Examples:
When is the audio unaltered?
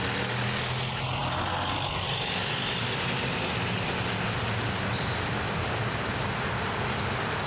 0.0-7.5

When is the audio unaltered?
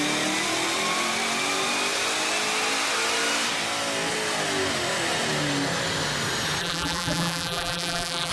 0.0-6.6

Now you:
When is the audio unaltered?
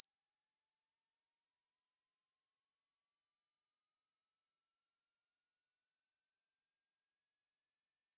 1.8-5.9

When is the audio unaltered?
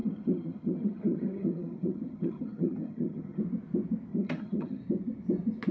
3.4-4.1; 4.8-5.7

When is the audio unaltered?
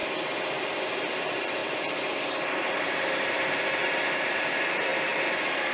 0.0-0.9; 1.6-2.5; 3.8-4.3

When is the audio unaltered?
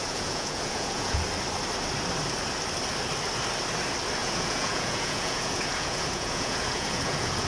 1.2-4.2